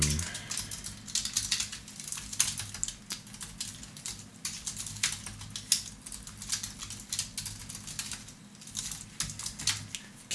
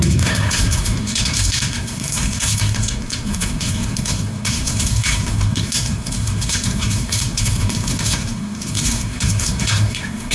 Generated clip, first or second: second